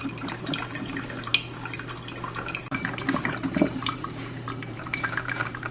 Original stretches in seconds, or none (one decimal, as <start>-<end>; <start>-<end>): 1.3-2.6